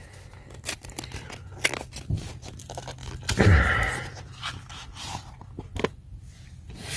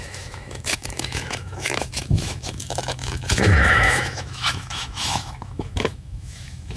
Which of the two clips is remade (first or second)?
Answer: second